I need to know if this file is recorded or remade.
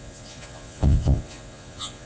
remade